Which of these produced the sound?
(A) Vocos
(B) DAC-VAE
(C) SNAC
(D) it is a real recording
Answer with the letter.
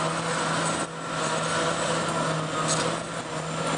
D